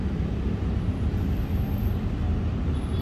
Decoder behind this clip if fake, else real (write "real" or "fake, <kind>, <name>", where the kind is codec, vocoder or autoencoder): real